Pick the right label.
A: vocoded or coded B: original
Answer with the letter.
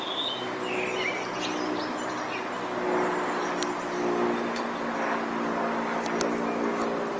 B